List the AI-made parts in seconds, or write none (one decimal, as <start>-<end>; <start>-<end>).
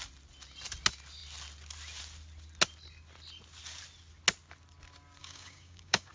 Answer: 5.2-6.1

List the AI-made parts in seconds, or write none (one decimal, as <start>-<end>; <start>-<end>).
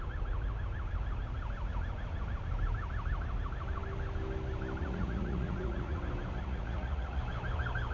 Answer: 4.8-6.0; 6.4-7.2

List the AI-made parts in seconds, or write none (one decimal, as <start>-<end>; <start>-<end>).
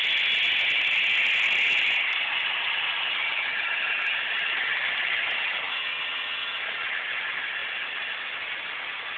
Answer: 5.7-6.6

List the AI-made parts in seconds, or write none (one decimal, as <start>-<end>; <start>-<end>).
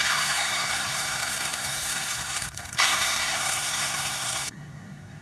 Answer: 0.0-5.2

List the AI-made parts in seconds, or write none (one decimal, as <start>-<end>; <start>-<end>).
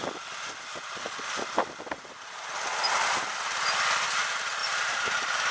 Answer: 4.6-5.5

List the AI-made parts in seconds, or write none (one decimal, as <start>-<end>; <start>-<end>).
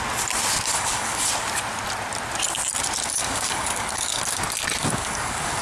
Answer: 0.7-1.3; 3.1-4.2; 4.8-5.6